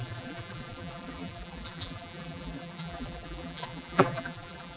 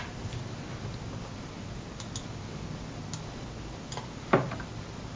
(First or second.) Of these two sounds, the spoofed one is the first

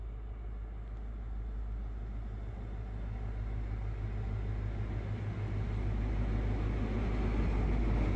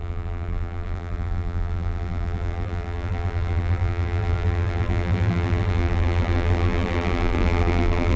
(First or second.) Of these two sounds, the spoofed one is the second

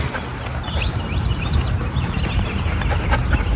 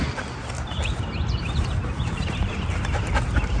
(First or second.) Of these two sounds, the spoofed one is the second